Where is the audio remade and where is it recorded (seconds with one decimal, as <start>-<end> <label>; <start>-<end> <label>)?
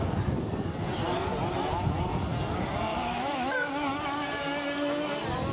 0.0-2.9 recorded; 2.9-3.7 remade; 3.7-5.5 recorded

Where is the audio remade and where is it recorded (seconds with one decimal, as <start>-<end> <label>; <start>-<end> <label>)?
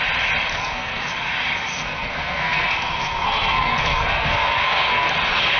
0.0-0.5 recorded; 0.5-1.0 remade; 1.0-1.7 recorded; 1.7-5.1 remade; 5.1-5.6 recorded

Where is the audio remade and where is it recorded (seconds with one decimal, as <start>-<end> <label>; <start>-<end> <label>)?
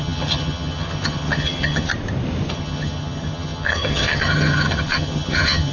0.0-1.9 remade; 1.9-2.5 recorded; 2.5-5.7 remade